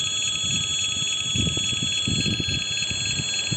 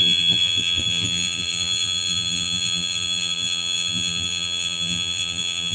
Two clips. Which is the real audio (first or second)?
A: first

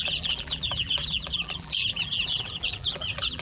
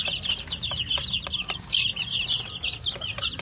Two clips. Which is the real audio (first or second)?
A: second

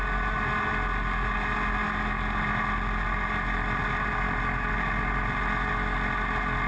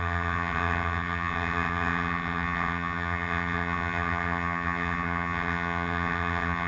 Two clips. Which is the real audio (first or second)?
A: first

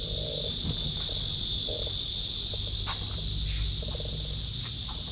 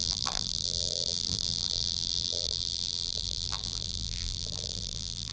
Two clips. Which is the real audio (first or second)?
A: first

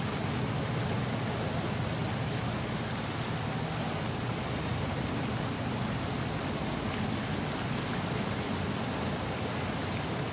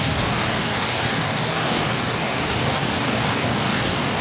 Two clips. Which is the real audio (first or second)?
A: first